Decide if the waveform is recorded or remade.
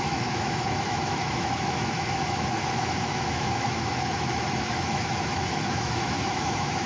remade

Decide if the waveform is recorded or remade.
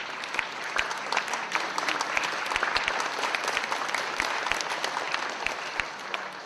recorded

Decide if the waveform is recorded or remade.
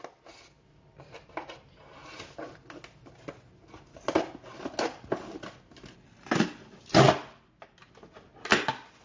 recorded